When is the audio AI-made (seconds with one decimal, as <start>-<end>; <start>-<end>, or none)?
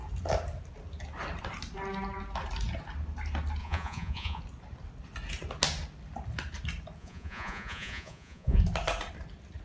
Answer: 3.6-4.4; 7.0-8.6